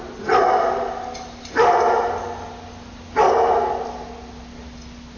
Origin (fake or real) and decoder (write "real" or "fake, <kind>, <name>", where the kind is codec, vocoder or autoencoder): real